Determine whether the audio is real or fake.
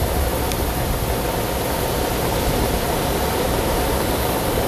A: real